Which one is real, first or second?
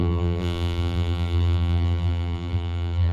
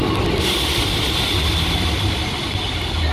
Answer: second